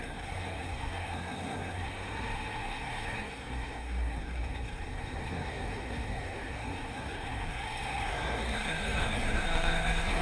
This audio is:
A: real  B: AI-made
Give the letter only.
B